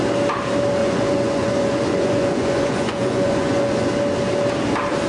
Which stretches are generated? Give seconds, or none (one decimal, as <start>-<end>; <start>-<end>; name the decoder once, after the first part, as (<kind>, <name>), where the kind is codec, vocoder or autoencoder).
0.8-3.9 (vocoder, Vocos)